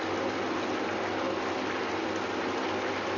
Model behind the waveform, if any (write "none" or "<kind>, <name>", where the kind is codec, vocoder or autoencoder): none